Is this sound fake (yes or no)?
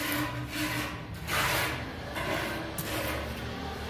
no